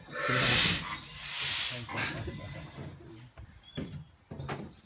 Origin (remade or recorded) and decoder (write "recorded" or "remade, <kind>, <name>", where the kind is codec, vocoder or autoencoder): recorded